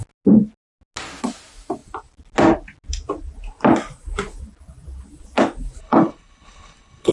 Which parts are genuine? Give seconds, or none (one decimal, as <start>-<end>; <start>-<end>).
0.0-5.8

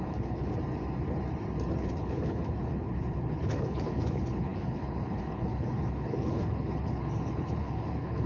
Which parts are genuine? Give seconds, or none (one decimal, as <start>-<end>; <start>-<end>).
0.5-1.8

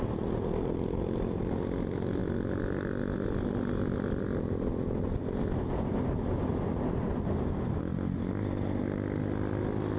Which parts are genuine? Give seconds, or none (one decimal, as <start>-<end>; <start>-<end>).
0.0-10.0

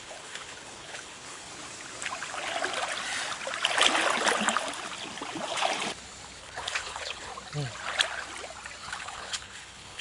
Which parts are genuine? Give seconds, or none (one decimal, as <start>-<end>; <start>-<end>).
1.5-6.4; 7.3-8.8

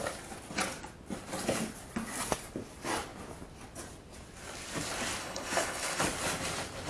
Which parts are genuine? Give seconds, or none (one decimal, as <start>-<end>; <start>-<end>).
0.0-5.2; 6.0-6.9